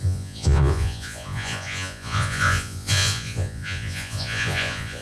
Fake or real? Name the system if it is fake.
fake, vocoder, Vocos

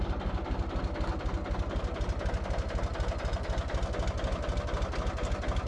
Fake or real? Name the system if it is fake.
real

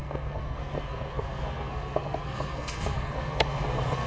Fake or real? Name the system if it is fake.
fake, codec, SNAC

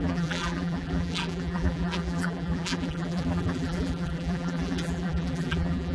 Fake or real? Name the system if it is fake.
fake, vocoder, BigVGAN v2